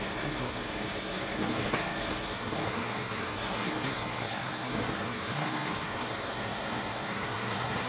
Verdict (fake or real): fake